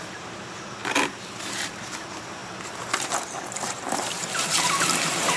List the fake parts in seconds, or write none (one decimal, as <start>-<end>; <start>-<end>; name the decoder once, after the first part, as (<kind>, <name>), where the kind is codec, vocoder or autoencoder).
0.0-0.8 (vocoder, BigVGAN v2); 1.8-5.4